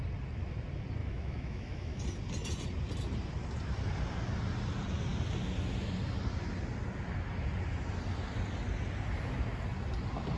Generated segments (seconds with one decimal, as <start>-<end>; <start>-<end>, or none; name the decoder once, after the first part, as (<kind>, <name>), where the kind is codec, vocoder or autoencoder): 1.0-2.0 (autoencoder, DAC-VAE)